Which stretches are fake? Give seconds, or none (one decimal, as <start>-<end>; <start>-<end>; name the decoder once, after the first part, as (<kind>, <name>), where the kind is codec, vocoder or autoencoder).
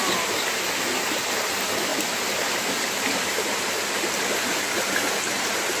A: none